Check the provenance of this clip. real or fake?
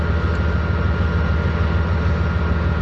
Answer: real